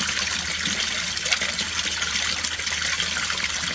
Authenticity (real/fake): real